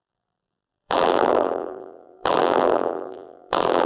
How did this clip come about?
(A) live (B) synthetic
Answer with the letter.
B